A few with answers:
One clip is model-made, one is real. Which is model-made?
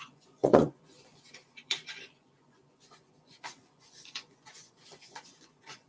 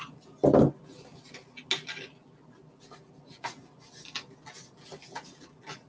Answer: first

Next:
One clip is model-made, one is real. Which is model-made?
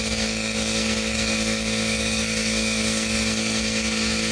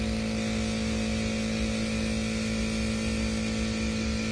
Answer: first